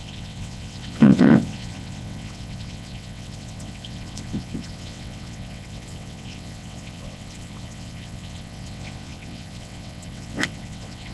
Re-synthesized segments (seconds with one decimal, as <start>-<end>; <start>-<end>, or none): 0.0-11.1